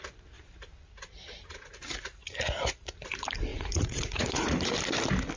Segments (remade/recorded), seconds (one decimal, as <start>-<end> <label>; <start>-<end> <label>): 0.0-3.5 recorded; 3.5-4.7 remade; 4.7-5.4 recorded